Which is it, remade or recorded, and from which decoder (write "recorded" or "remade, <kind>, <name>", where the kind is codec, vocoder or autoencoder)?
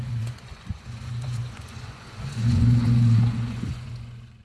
remade, vocoder, Vocos